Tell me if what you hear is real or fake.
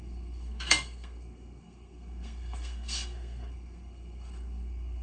fake